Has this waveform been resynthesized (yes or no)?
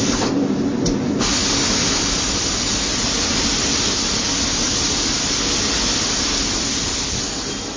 no